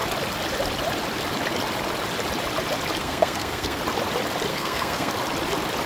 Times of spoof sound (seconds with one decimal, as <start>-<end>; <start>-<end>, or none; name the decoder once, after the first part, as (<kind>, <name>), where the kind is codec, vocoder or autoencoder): 3.0-3.8 (codec, SNAC); 4.5-5.1